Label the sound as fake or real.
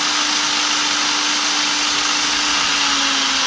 real